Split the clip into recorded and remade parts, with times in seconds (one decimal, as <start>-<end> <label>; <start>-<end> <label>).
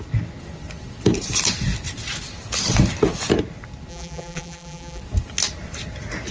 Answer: 0.0-3.9 recorded; 3.9-5.0 remade; 5.0-6.3 recorded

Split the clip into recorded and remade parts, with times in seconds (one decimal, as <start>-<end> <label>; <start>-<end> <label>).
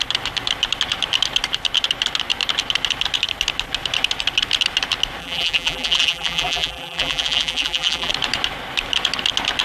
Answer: 0.0-5.2 recorded; 5.2-8.1 remade; 8.1-9.6 recorded